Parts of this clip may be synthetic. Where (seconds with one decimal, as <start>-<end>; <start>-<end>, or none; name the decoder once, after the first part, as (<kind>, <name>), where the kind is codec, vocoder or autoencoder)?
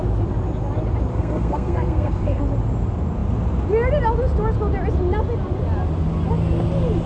1.1-2.4 (codec, SNAC)